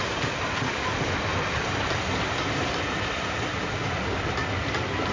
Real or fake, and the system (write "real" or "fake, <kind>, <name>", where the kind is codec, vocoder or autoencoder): real